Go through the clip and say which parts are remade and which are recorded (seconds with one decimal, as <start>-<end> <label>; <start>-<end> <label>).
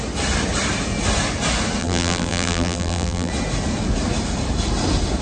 0.0-1.8 recorded; 1.8-3.3 remade; 3.3-5.2 recorded